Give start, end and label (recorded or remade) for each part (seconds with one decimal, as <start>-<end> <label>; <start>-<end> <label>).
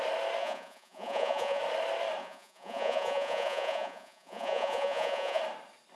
0.0-0.4 recorded; 0.4-1.6 remade; 1.6-2.2 recorded; 2.2-5.4 remade; 5.4-6.0 recorded